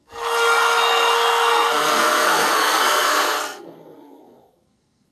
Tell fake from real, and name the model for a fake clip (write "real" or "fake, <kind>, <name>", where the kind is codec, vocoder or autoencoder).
fake, codec, SNAC